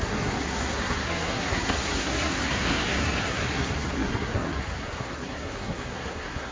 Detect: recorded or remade remade